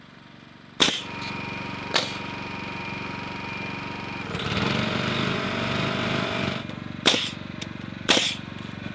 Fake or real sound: real